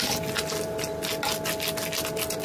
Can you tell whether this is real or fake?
real